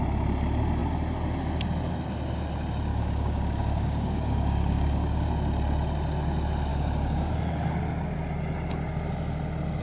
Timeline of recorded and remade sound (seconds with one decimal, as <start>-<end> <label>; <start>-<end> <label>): 0.0-2.9 recorded; 2.9-5.3 remade; 5.3-6.7 recorded; 6.7-7.3 remade; 7.3-9.8 recorded